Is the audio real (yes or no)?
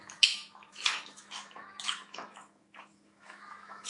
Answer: no